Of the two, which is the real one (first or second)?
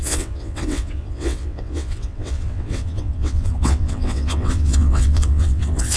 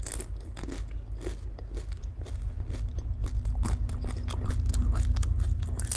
second